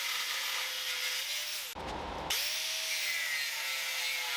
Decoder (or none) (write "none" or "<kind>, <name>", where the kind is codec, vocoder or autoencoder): none